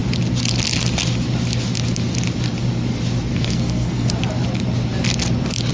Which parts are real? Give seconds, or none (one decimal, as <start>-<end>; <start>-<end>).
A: 0.0-3.3; 4.1-5.7